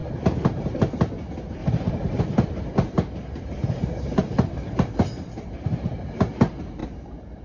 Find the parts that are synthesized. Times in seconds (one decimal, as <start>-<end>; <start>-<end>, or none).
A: 1.6-2.2; 6.8-7.4